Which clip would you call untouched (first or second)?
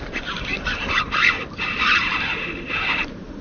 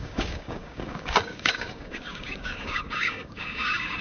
first